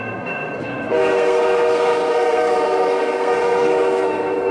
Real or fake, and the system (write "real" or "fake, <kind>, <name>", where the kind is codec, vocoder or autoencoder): fake, codec, SNAC